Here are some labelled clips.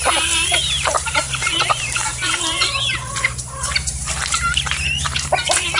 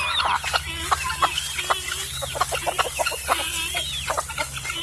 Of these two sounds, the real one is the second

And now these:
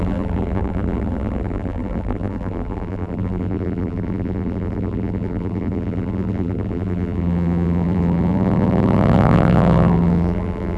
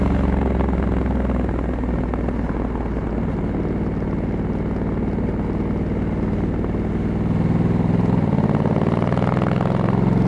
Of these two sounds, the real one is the second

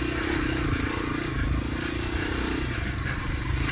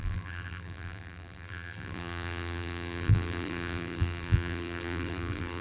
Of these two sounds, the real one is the first